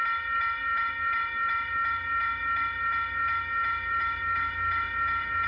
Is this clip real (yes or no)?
no